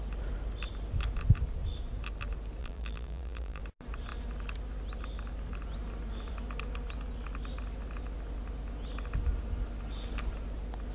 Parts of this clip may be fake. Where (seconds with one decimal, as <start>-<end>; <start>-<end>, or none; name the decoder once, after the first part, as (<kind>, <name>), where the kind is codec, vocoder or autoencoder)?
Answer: 2.6-3.6 (vocoder, BigVGAN v2)